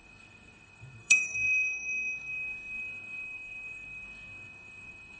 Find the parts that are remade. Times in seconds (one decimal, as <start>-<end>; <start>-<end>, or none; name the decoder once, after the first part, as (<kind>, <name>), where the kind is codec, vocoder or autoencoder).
0.0-5.2 (codec, SNAC)